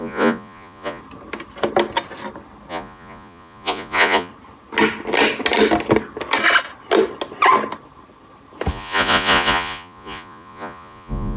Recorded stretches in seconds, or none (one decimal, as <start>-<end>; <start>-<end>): 1.0-2.7; 4.3-8.7